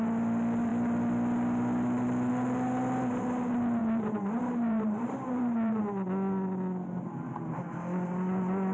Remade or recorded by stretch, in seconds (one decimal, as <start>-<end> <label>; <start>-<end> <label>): 0.0-3.8 recorded; 3.8-5.8 remade; 5.8-8.7 recorded